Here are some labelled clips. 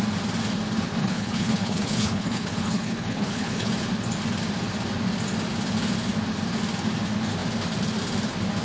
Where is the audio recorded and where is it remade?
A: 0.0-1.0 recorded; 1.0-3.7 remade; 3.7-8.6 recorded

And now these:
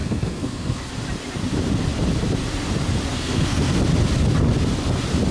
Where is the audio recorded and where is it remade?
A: 0.0-0.8 remade; 0.8-3.1 recorded; 3.1-3.8 remade; 3.8-5.3 recorded